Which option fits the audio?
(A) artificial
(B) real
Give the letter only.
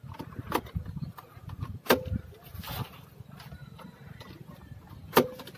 B